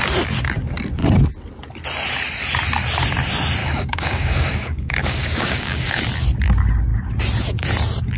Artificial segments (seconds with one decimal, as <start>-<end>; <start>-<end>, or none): 3.6-6.0